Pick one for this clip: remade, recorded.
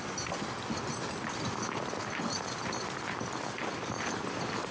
recorded